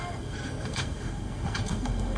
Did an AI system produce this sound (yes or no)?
yes